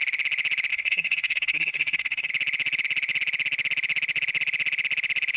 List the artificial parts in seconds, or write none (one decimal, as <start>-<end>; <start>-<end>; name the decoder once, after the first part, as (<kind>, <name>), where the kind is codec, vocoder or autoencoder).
0.7-2.3 (codec, SNAC)